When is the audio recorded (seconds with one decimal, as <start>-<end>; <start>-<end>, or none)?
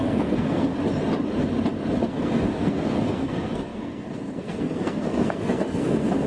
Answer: 0.7-2.0